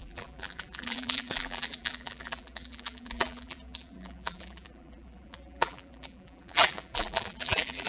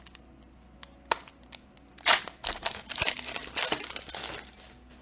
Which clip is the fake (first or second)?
first